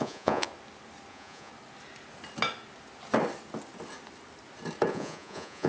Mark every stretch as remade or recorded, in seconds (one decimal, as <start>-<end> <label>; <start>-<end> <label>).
0.0-0.5 remade; 0.5-1.1 recorded; 1.1-1.5 remade; 1.5-4.9 recorded; 4.9-5.7 remade